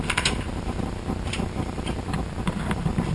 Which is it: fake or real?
real